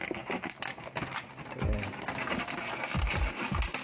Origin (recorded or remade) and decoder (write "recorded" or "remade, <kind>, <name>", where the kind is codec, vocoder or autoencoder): recorded